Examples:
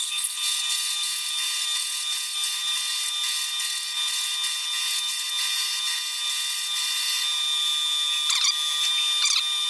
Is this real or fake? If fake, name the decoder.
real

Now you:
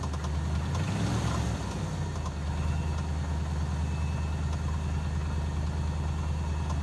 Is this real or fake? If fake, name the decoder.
real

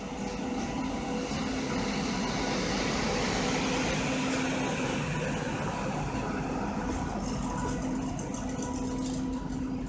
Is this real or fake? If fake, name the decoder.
real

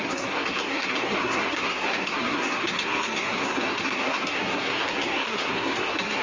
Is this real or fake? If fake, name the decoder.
fake, codec, SNAC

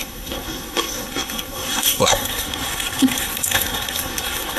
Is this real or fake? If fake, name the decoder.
fake, codec, SNAC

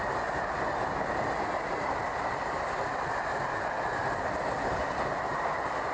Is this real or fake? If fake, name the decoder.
real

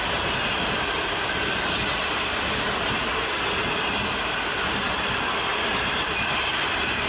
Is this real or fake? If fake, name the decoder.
real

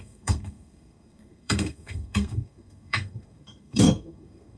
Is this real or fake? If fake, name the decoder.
fake, codec, SNAC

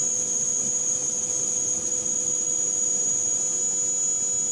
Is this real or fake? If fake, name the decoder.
real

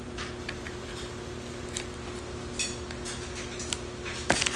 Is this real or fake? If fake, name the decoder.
real